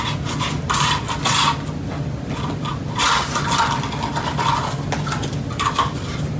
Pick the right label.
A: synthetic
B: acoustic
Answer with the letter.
B